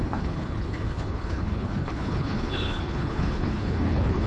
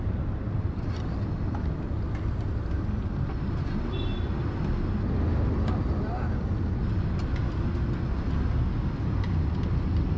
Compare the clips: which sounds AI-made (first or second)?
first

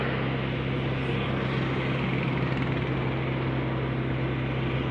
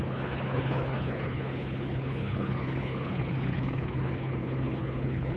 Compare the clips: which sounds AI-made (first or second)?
second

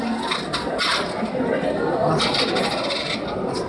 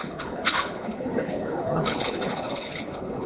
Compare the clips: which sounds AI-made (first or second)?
second